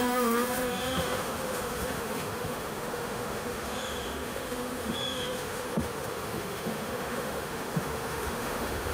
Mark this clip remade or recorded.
remade